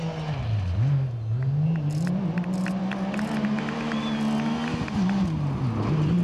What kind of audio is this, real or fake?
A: real